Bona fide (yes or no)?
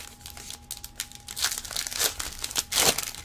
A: yes